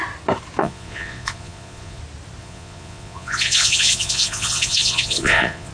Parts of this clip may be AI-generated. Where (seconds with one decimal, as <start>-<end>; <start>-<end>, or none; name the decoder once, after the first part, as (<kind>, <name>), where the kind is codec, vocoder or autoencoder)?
0.6-2.0 (vocoder, Vocos); 2.4-5.7